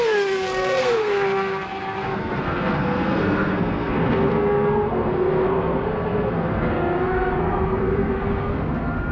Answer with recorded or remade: remade